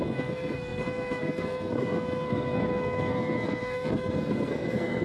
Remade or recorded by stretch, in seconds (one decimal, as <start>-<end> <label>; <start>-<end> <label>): 0.0-5.0 remade